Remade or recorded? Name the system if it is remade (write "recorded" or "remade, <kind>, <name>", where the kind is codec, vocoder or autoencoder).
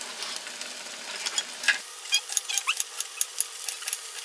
recorded